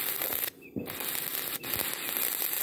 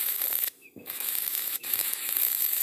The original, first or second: first